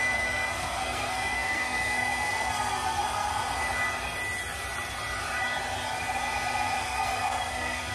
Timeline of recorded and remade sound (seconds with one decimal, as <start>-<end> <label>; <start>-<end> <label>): 0.0-3.3 remade; 3.3-6.8 recorded; 6.8-7.9 remade